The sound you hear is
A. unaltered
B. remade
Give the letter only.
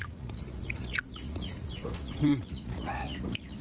B